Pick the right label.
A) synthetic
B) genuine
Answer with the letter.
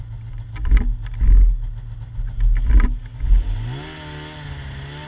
B